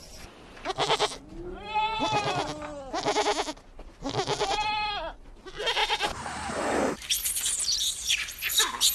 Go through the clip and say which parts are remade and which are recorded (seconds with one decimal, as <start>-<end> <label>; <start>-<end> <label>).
0.0-5.8 recorded; 5.8-8.5 remade; 8.5-8.9 recorded